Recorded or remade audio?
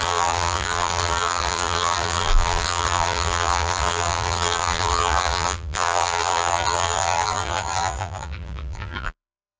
remade